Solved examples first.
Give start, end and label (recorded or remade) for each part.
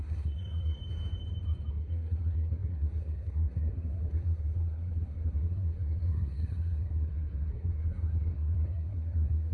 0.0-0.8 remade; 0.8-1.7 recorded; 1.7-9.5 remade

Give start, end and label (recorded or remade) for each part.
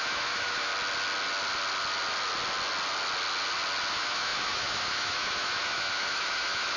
0.0-0.7 remade; 0.7-3.9 recorded; 3.9-6.8 remade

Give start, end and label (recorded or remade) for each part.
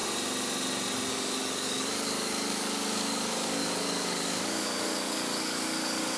0.0-1.1 recorded; 1.1-6.2 remade